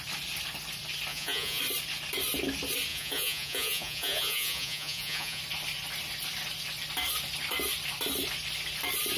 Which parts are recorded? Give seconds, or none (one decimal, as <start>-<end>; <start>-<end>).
0.0-1.1; 1.6-2.9; 5.4-9.2